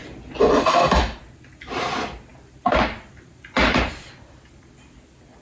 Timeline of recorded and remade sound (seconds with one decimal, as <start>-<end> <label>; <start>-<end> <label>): 0.0-5.4 recorded